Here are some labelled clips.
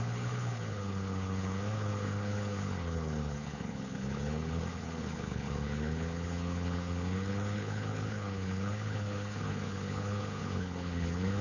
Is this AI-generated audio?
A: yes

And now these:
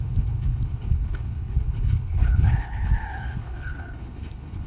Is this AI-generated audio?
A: yes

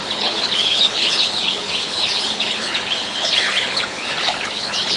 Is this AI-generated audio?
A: yes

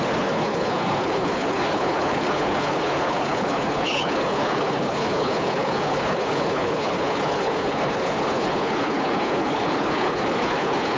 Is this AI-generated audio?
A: yes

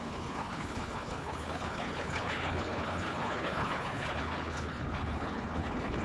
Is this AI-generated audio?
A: yes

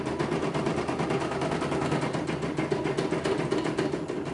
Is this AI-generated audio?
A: no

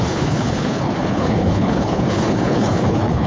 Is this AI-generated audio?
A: yes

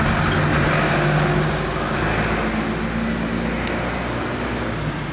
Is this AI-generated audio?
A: no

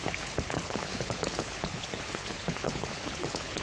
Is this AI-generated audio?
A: yes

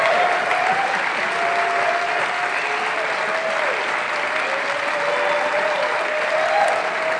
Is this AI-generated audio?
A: no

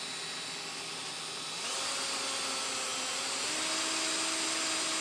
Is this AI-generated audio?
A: no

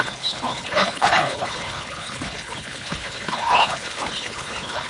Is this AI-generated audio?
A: yes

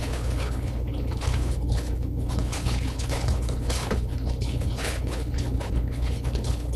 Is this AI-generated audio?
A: yes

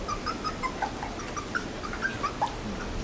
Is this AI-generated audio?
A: no